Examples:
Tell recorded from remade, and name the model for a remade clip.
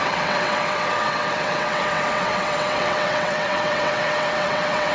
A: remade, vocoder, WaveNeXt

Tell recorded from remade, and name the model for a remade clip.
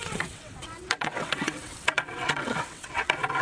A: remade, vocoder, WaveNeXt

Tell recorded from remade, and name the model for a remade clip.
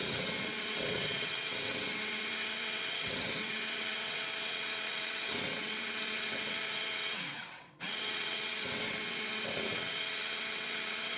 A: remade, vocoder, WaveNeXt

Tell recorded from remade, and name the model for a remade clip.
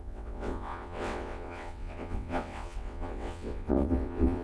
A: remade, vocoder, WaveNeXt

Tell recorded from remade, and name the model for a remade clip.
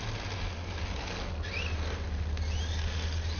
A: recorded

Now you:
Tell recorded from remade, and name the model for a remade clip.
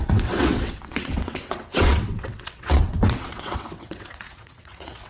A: remade, vocoder, WaveNeXt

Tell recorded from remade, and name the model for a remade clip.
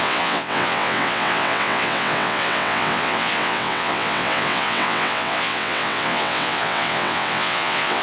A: remade, vocoder, WaveNeXt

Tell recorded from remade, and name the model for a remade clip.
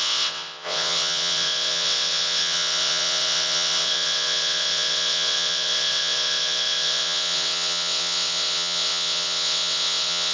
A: remade, vocoder, WaveNeXt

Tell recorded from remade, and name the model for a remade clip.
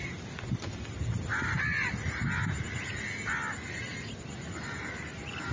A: recorded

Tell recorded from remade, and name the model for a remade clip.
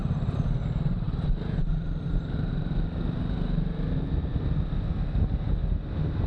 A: recorded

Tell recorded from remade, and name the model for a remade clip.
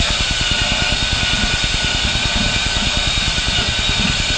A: recorded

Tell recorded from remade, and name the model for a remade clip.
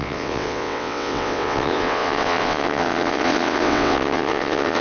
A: remade, vocoder, WaveNeXt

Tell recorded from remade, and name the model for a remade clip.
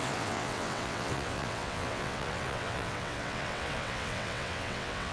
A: remade, vocoder, WaveNeXt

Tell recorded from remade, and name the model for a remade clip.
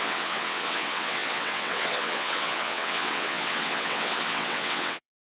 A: remade, vocoder, WaveNeXt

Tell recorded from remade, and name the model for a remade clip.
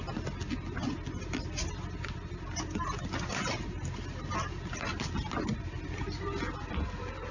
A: recorded